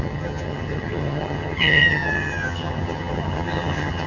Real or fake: fake